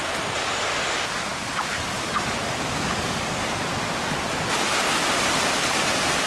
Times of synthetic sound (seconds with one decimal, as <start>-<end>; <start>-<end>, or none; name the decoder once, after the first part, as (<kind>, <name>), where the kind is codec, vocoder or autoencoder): none

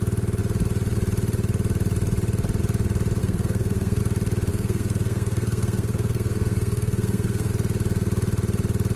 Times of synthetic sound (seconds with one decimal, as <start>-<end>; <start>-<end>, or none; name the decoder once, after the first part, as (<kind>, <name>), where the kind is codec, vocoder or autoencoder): 3.2-4.0 (codec, SNAC); 4.5-7.5

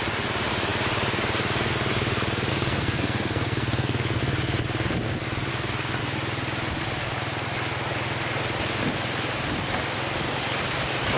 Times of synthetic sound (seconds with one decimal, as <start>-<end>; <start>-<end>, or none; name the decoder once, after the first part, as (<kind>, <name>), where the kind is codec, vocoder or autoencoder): 2.5-4.2 (codec, SNAC); 5.5-6.0

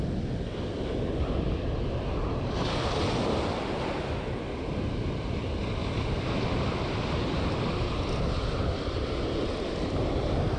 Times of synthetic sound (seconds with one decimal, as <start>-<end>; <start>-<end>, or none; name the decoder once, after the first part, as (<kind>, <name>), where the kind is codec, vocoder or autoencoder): 5.8-9.7 (vocoder, BigVGAN v2)

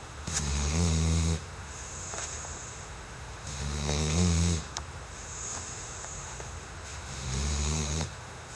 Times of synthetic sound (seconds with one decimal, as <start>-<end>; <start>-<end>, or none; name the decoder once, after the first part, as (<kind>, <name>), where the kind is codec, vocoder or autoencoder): 0.0-8.6 (autoencoder, DAC-VAE)

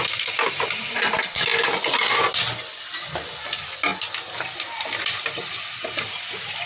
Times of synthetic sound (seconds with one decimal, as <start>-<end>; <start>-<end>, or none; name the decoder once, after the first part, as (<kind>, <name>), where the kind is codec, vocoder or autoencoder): none

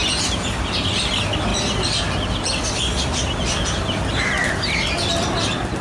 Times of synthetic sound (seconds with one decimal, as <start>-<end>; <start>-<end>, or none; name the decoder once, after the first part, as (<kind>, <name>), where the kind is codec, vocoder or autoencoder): none

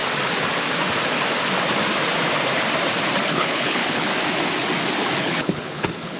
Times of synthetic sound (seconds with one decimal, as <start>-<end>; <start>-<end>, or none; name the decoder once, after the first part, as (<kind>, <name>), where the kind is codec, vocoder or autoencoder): 3.3-4.1 (codec, HILCodec); 5.2-6.2